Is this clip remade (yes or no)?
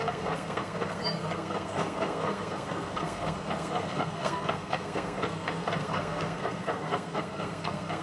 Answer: yes